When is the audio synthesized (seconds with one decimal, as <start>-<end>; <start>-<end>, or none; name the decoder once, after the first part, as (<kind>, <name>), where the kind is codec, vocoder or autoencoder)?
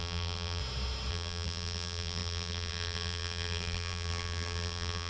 0.0-0.6 (vocoder, BigVGAN v2); 1.1-5.1